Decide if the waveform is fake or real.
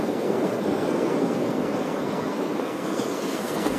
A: fake